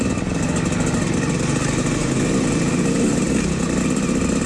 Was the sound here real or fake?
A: real